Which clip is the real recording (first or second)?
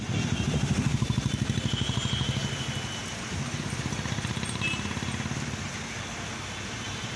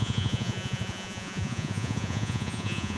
first